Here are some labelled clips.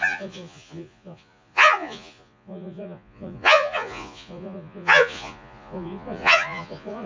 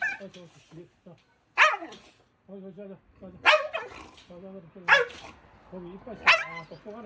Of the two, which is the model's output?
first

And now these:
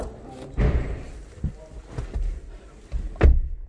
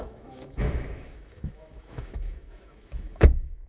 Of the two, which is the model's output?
second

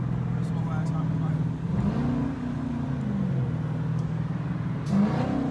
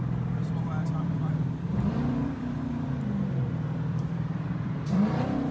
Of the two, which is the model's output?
second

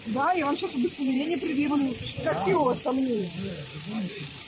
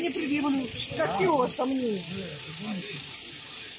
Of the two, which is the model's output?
first